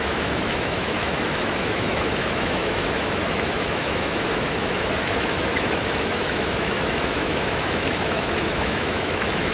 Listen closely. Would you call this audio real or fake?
fake